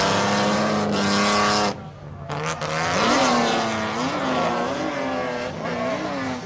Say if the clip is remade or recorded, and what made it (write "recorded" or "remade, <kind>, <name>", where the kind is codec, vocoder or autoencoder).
recorded